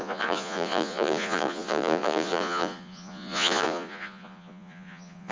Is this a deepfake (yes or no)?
yes